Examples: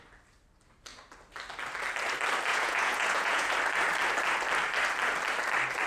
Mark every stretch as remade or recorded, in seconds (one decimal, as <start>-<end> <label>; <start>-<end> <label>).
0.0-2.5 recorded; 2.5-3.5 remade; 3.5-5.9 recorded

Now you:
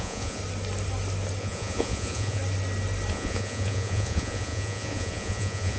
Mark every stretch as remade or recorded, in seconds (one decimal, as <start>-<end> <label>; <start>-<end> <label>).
0.0-0.4 remade; 0.4-1.4 recorded; 1.4-2.4 remade; 2.4-3.1 recorded; 3.1-5.8 remade

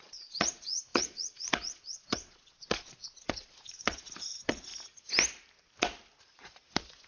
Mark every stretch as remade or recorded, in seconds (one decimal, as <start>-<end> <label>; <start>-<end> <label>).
0.0-4.7 remade; 4.7-6.2 recorded; 6.2-7.1 remade

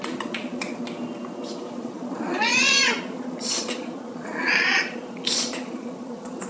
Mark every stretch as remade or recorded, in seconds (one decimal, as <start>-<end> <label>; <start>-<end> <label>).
0.0-0.8 remade; 0.8-1.7 recorded; 1.7-6.5 remade